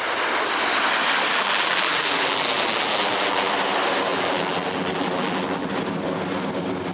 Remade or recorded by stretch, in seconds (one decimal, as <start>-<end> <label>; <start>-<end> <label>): 0.0-1.3 recorded; 1.3-3.5 remade; 3.5-4.1 recorded; 4.1-5.7 remade; 5.7-6.9 recorded